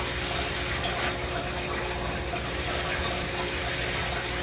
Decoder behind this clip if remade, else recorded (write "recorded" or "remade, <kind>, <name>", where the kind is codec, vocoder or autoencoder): recorded